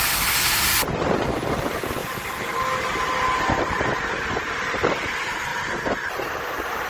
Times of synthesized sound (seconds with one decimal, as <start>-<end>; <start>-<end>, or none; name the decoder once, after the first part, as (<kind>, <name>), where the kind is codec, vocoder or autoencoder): none